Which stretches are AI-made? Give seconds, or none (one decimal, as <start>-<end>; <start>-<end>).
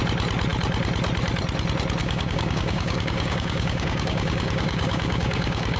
2.0-5.8